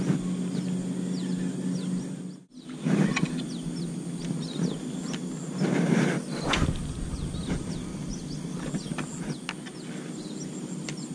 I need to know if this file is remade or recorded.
recorded